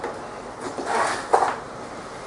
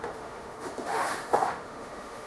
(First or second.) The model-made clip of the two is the second